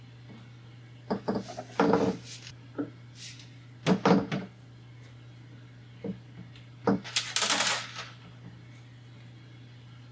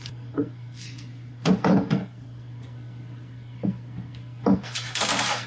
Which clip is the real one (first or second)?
first